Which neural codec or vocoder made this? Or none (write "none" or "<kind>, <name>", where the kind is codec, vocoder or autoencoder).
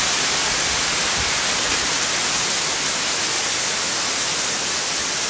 none